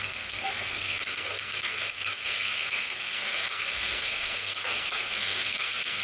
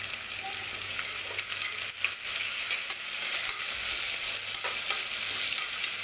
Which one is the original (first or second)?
second